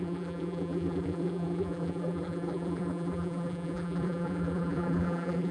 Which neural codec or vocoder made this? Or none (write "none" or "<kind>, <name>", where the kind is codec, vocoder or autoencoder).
vocoder, BigVGAN v2